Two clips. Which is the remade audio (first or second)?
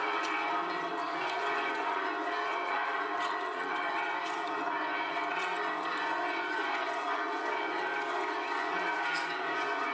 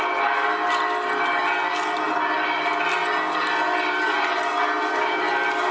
first